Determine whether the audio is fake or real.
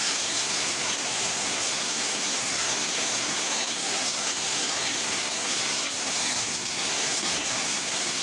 fake